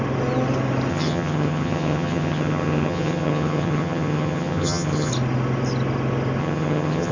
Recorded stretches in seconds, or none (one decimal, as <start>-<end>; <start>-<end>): 0.0-0.9; 5.1-6.4